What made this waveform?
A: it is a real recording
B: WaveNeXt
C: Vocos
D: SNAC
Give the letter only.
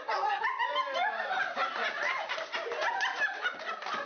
A